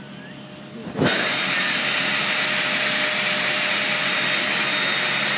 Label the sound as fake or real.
real